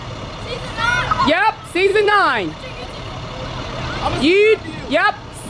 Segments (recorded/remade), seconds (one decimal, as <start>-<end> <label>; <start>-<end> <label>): 0.0-1.9 recorded; 1.9-3.6 remade; 3.6-5.5 recorded